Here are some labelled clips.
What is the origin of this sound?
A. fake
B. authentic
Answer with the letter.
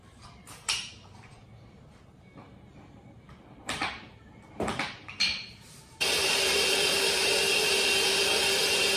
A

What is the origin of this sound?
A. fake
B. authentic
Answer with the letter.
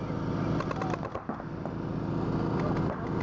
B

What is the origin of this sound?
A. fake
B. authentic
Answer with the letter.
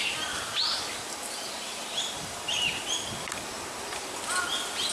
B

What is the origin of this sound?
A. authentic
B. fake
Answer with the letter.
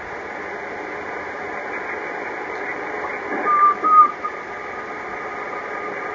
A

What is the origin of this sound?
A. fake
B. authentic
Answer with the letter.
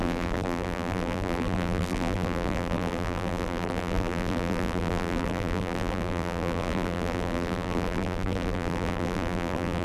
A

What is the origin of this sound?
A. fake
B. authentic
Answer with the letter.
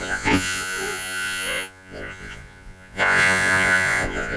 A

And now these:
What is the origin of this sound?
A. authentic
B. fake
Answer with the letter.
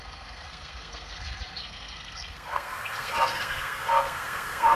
B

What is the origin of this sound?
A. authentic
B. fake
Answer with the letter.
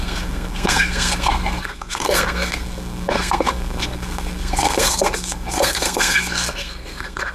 B